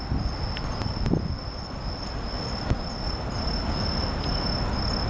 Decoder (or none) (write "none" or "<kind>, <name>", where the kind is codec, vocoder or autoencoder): none